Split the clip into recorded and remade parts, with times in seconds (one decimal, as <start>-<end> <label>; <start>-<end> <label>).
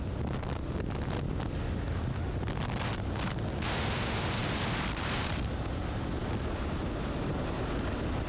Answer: 0.0-8.3 recorded